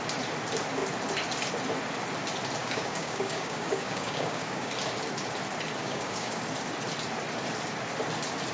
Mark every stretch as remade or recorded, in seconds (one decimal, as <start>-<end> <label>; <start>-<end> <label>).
0.0-2.6 recorded; 2.6-4.7 remade; 4.7-5.8 recorded; 5.8-6.4 remade; 6.4-8.5 recorded